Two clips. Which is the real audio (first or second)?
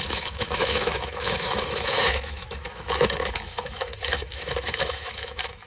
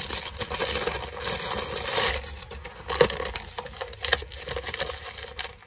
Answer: second